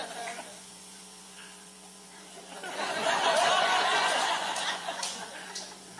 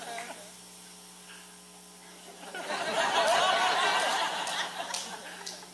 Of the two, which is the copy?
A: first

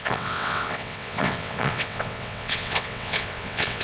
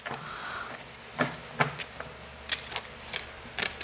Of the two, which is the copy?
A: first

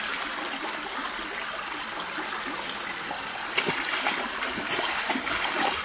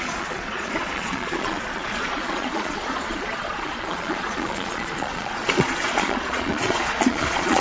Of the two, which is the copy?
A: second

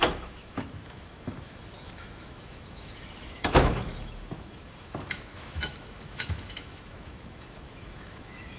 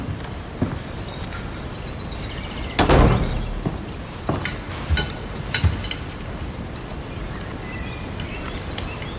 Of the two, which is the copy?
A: first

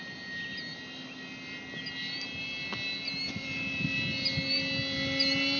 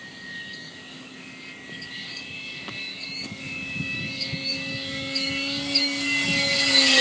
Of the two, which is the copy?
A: second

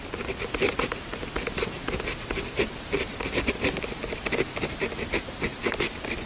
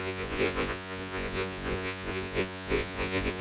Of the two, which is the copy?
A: second